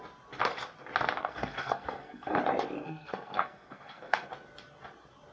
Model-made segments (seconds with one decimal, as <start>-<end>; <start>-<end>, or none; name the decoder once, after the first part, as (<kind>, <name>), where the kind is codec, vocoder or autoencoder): 1.2-2.4 (codec, SNAC); 2.8-4.3